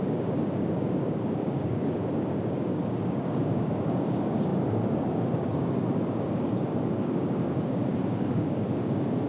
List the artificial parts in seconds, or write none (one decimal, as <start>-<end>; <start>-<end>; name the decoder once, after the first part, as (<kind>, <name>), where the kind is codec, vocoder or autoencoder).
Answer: 0.0-9.3 (codec, DAC)